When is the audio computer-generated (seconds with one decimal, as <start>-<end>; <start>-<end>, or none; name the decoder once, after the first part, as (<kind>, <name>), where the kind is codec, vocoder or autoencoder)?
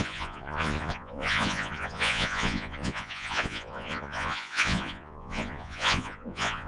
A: 0.0-6.7 (vocoder, Vocos)